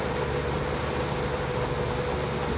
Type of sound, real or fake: real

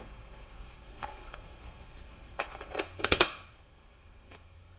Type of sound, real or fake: fake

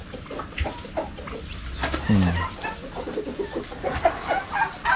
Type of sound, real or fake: real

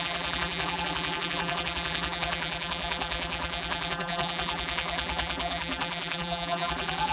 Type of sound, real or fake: fake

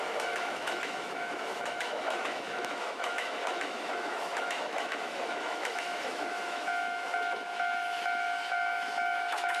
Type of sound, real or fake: fake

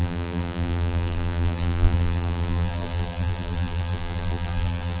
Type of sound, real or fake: fake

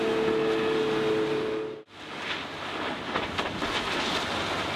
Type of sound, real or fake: real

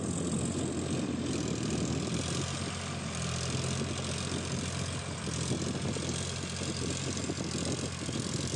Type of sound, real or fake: real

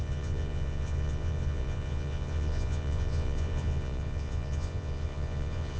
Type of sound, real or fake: fake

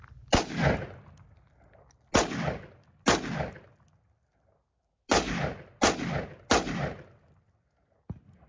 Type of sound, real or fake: real